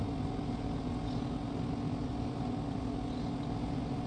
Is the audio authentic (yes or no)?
yes